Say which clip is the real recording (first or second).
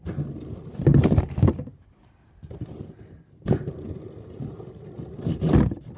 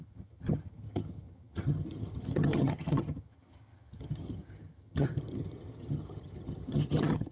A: first